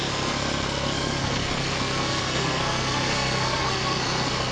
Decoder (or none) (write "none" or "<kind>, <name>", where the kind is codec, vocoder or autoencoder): codec, SNAC